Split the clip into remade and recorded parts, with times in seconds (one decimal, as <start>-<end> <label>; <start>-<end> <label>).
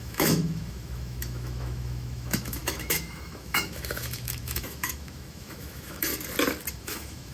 0.0-6.1 remade; 6.1-6.7 recorded; 6.7-7.3 remade